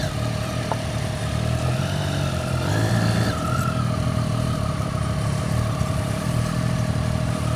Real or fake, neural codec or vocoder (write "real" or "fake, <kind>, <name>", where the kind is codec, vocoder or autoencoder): real